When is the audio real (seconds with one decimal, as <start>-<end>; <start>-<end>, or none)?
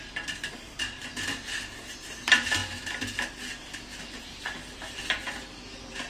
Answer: 1.1-1.8; 2.6-4.2